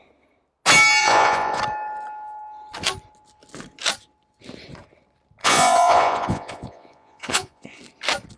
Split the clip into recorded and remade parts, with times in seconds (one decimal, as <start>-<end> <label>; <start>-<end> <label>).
0.0-1.0 recorded; 1.0-1.6 remade; 1.6-5.4 recorded; 5.4-7.8 remade; 7.8-8.4 recorded